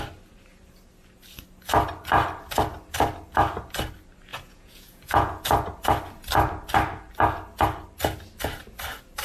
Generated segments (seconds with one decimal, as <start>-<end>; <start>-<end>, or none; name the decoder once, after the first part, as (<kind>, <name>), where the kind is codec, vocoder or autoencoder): 4.3-5.4 (vocoder, Vocos)